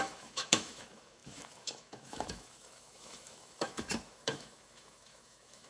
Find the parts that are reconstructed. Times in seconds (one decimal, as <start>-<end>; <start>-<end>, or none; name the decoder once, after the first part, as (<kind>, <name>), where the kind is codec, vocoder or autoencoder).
0.0-5.7 (autoencoder, DAC-VAE)